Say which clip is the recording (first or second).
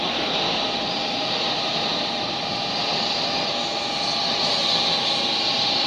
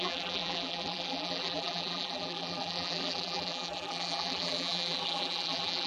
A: first